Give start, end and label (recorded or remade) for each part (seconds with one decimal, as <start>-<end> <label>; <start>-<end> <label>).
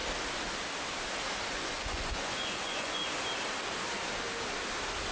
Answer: 0.0-1.5 recorded; 1.5-3.0 remade; 3.0-5.1 recorded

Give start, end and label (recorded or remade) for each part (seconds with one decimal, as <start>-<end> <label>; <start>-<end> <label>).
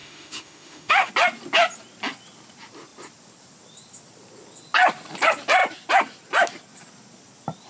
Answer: 0.0-1.1 remade; 1.1-7.7 recorded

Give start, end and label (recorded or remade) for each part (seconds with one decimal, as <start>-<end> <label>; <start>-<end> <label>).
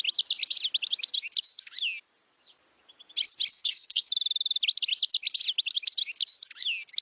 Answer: 0.0-3.5 recorded; 3.5-4.1 remade; 4.1-7.0 recorded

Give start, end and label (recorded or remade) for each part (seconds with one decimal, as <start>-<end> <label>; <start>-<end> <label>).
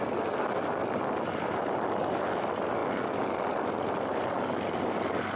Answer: 0.0-5.4 recorded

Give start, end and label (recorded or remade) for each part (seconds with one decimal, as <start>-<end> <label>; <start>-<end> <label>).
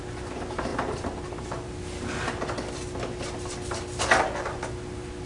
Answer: 0.0-5.3 recorded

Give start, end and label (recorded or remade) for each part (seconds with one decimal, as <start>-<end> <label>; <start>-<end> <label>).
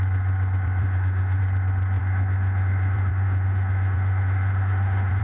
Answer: 0.0-0.8 recorded; 0.8-1.4 remade; 1.4-2.0 recorded; 2.0-5.2 remade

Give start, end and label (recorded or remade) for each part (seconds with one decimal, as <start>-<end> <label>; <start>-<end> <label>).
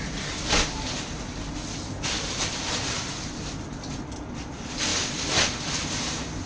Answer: 0.0-4.9 recorded; 4.9-6.0 remade; 6.0-6.5 recorded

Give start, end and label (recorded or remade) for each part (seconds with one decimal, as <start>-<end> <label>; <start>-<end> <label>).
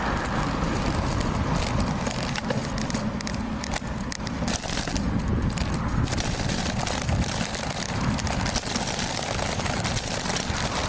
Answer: 0.0-10.9 recorded